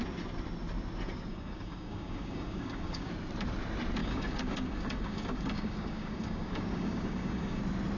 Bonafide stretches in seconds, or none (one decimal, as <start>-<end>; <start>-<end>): 0.0-1.3; 3.1-4.0; 7.6-8.0